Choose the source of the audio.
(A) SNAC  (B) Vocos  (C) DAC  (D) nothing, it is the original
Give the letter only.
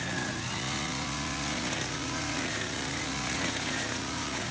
B